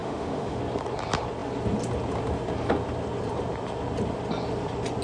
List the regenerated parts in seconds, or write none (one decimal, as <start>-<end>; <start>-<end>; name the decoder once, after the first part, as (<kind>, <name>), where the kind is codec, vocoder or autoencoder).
0.0-0.6 (autoencoder, DAC-VAE)